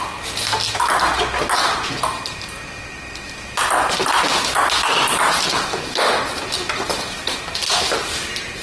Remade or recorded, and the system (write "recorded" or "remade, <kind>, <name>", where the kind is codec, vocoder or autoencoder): recorded